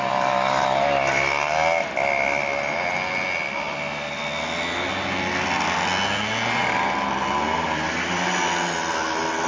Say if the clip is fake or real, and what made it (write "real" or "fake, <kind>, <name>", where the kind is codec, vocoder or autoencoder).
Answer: real